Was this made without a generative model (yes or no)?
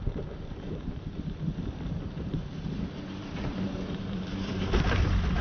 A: no